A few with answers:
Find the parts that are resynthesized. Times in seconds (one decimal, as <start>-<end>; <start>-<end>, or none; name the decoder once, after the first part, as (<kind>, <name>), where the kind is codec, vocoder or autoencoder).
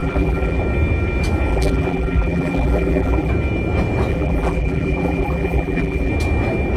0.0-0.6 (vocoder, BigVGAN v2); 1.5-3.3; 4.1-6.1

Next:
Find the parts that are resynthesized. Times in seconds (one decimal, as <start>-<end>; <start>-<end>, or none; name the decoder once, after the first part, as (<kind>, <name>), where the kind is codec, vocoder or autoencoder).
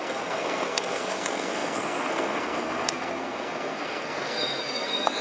0.0-5.2 (codec, SNAC)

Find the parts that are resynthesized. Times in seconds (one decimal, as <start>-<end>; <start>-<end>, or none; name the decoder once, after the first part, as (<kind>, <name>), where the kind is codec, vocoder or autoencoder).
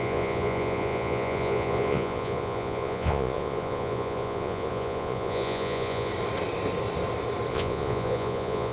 0.0-6.1 (vocoder, Vocos); 7.5-8.7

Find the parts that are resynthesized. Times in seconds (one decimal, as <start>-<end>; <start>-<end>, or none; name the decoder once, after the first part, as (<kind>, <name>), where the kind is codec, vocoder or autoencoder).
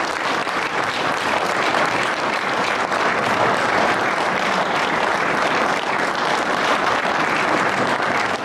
0.4-2.8 (vocoder, BigVGAN v2); 3.2-7.0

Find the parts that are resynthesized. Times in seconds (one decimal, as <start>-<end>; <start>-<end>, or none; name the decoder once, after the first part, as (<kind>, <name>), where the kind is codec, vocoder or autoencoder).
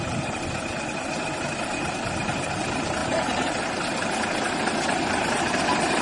3.0-3.7 (vocoder, BigVGAN v2)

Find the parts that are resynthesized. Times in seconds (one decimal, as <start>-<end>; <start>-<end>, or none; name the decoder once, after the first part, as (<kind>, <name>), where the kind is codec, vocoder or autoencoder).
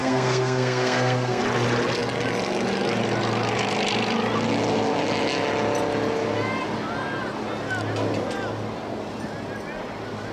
0.0-1.4 (codec, SNAC)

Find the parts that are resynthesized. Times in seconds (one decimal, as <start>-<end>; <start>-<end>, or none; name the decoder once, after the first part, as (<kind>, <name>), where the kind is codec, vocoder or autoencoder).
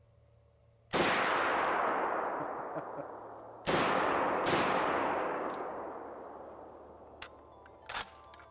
5.0-5.7 (codec, DAC)